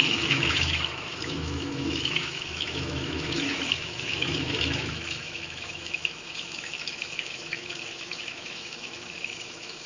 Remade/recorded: remade